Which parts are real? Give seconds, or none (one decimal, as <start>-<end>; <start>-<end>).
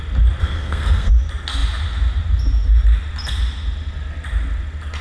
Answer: 0.0-0.4; 1.1-5.0